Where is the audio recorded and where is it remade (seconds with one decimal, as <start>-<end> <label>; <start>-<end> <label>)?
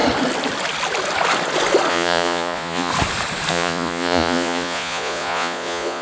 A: 0.0-1.9 recorded; 1.9-2.9 remade; 2.9-3.5 recorded; 3.5-6.0 remade